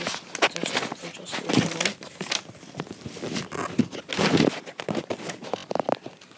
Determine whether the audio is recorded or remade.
recorded